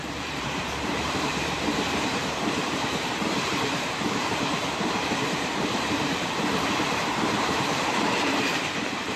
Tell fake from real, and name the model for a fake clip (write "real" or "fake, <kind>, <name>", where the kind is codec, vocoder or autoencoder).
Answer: fake, vocoder, BigVGAN v2